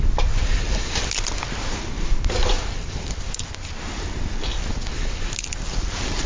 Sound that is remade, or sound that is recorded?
recorded